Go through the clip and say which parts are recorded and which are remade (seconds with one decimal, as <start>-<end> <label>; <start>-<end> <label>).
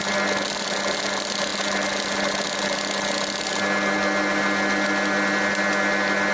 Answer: 0.0-6.3 recorded